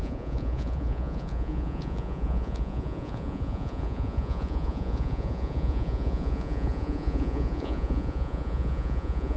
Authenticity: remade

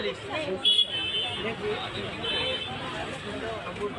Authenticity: recorded